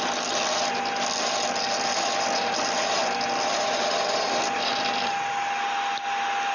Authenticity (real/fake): real